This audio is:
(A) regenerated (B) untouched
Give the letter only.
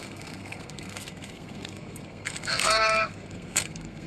A